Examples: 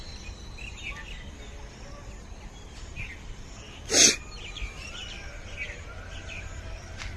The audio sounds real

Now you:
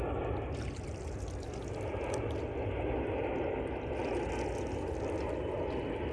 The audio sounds real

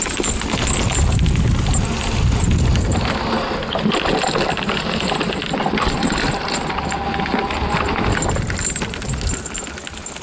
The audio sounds real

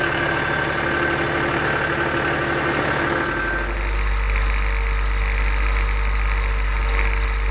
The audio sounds real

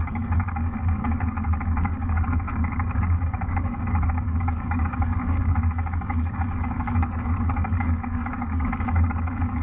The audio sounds fake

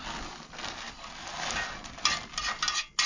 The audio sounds real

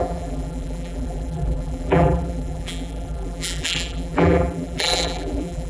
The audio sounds fake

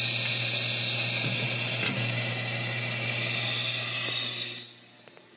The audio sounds real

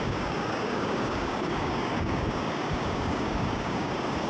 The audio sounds fake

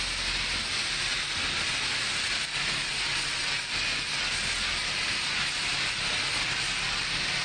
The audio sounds real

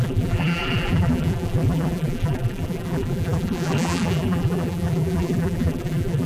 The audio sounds fake